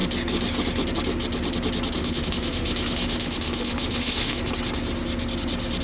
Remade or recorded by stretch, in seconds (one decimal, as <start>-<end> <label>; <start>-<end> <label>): 0.0-2.0 recorded; 2.0-4.5 remade; 4.5-5.8 recorded